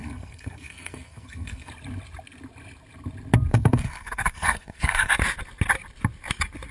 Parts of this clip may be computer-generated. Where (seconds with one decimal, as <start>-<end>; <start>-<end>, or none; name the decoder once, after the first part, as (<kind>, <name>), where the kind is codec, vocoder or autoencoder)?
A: 0.0-1.7 (codec, SNAC); 3.5-5.1